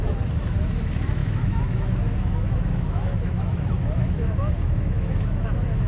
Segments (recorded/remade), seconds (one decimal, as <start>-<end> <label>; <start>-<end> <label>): 0.0-5.9 remade